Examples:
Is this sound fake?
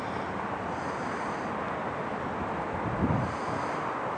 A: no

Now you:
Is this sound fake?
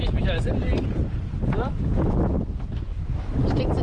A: no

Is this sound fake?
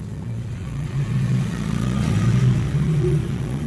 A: yes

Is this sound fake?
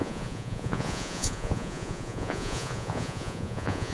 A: yes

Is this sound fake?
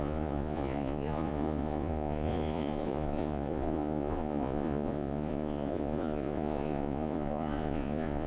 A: yes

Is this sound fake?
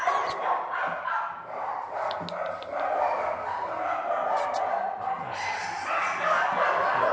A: no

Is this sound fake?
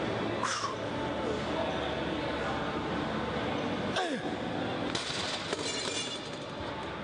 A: no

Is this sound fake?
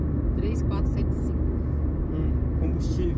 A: no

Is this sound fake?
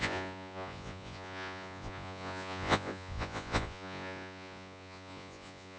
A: yes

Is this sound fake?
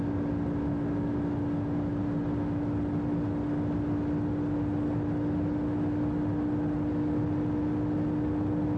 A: no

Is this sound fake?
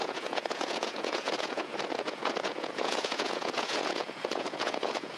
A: yes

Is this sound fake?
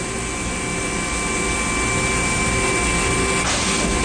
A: no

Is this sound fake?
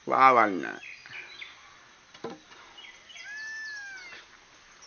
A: no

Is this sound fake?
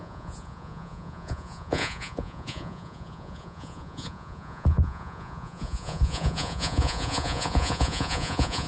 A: yes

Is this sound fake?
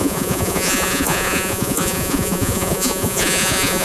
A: yes